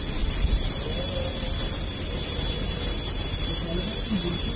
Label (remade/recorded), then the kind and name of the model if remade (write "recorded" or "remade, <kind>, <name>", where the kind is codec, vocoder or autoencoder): recorded